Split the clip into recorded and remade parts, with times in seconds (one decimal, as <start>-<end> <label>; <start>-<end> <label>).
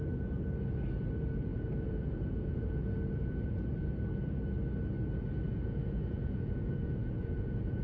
0.0-1.5 recorded; 1.5-3.0 remade; 3.0-5.5 recorded; 5.5-7.8 remade